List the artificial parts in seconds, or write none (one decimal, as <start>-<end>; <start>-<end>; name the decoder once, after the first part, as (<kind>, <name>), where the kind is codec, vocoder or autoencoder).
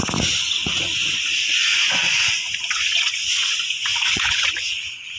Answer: 1.7-4.5 (vocoder, Vocos)